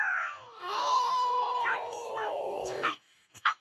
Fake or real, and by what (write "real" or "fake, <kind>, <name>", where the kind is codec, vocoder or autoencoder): fake, codec, DAC